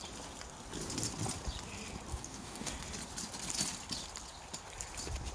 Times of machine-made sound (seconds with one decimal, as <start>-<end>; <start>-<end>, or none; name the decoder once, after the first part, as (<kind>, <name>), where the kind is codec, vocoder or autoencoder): 2.1-2.7 (codec, DAC)